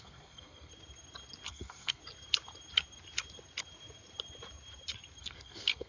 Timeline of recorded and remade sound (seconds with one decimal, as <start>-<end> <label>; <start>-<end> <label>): 0.0-0.7 remade; 0.7-1.5 recorded; 1.5-2.0 remade; 2.0-5.2 recorded; 5.2-5.9 remade